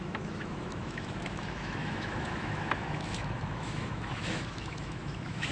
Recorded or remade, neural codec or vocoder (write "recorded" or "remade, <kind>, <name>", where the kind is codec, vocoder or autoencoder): remade, autoencoder, DAC-VAE